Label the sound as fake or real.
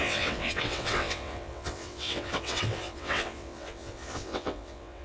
fake